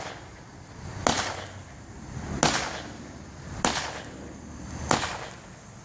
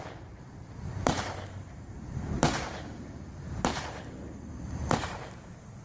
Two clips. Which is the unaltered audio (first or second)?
first